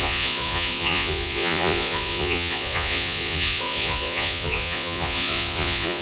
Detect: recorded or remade remade